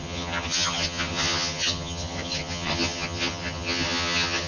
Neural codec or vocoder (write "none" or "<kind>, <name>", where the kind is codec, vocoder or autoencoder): vocoder, HiFi-GAN